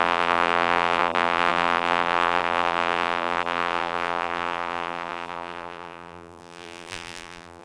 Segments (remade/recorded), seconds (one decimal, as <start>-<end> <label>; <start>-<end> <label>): 0.0-7.6 remade